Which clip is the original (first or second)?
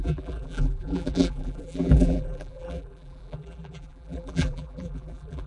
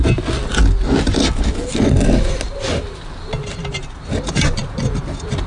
second